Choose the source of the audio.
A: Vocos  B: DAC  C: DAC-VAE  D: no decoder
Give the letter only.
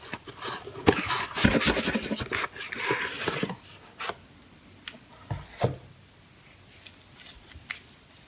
D